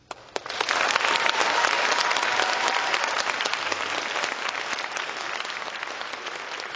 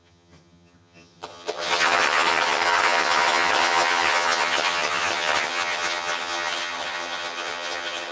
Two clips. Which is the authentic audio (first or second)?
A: first